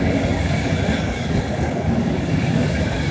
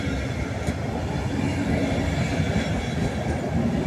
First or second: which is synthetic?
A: first